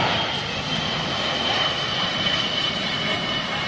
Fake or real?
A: real